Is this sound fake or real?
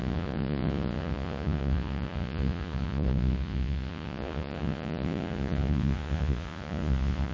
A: fake